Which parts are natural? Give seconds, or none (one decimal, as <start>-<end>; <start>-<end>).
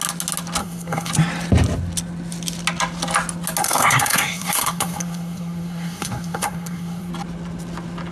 0.0-0.6; 1.1-3.6; 7.1-8.1